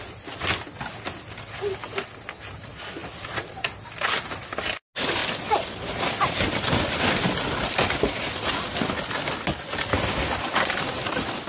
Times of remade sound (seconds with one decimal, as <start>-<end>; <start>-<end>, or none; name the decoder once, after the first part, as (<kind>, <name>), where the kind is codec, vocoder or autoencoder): none